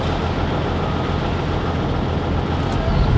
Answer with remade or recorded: recorded